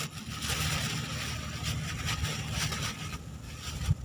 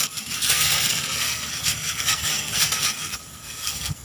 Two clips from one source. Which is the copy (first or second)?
second